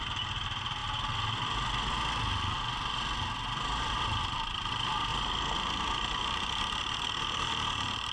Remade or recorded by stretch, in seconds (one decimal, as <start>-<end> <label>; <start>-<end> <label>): 0.0-0.8 remade; 0.8-1.8 recorded; 1.8-5.1 remade; 5.1-6.8 recorded; 6.8-8.1 remade